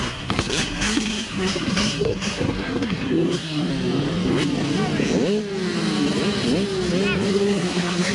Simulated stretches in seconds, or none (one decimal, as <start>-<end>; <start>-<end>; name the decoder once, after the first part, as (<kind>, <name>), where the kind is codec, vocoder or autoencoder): 0.0-3.7 (codec, SNAC); 7.3-8.1